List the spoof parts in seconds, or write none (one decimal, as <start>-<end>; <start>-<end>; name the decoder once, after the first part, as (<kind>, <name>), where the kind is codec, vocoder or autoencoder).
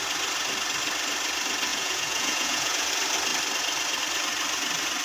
1.7-2.9 (vocoder, Vocos)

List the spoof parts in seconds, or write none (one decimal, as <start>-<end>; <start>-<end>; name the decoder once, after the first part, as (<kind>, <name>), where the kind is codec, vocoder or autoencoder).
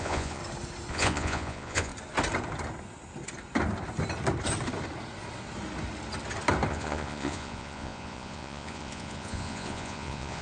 0.0-0.4 (vocoder, Vocos); 0.9-1.9; 6.7-10.4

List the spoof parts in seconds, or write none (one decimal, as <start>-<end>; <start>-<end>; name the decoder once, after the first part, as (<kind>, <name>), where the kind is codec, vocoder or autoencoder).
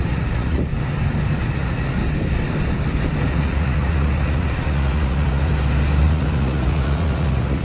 0.0-0.7 (vocoder, Vocos); 1.5-2.0; 3.3-5.5; 6.0-7.6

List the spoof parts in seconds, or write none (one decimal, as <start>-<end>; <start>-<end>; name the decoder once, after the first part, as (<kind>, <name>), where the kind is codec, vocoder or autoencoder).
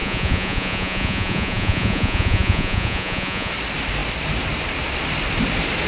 0.0-3.5 (vocoder, Vocos)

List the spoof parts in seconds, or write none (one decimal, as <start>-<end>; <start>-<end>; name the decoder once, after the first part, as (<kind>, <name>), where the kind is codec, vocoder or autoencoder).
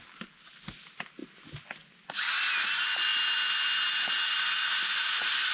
none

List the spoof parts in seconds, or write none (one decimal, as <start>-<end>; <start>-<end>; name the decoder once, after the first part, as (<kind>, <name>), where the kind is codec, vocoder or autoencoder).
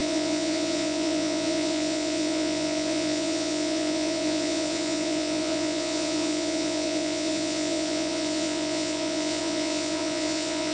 0.0-10.7 (vocoder, Vocos)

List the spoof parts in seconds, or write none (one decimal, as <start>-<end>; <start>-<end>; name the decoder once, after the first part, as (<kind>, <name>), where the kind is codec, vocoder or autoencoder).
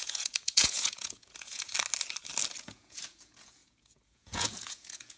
0.0-1.7 (vocoder, Vocos); 2.6-5.2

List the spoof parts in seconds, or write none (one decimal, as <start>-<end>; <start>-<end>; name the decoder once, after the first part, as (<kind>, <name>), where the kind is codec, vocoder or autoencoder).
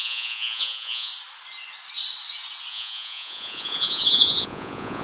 0.0-1.1 (vocoder, Vocos); 2.7-5.0